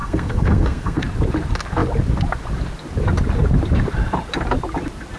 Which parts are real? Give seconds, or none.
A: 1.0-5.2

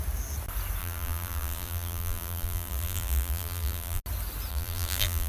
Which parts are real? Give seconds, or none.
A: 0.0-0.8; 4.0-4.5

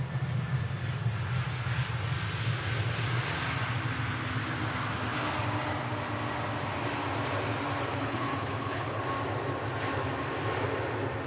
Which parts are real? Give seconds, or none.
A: 0.0-7.9; 9.0-11.3

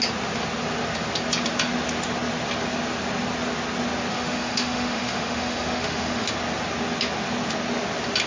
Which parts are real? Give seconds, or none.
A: 0.0-4.1; 6.3-8.3

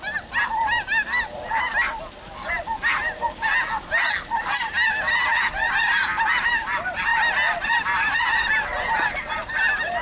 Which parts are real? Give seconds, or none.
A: 0.0-10.0